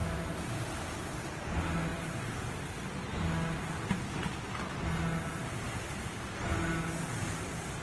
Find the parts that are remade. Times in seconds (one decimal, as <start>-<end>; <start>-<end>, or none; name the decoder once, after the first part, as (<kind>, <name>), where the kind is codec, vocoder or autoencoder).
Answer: 1.9-2.5 (vocoder, BigVGAN v2)